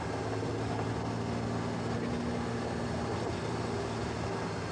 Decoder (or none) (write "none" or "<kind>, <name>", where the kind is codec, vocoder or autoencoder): none